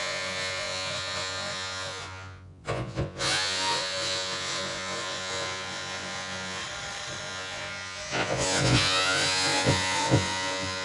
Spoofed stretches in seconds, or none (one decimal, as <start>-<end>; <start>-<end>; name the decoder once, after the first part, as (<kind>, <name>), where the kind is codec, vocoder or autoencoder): 0.0-6.6 (vocoder, Vocos); 7.2-10.8